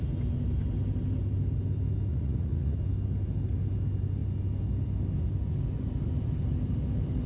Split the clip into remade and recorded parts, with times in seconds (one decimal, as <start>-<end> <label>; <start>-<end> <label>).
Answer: 0.0-2.1 recorded; 2.1-2.8 remade; 2.8-7.3 recorded